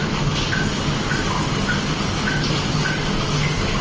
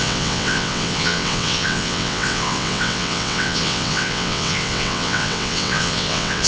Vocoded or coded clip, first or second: second